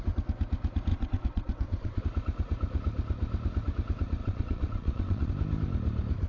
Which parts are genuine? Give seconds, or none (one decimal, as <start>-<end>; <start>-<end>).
0.0-0.9; 2.0-4.2; 5.3-6.3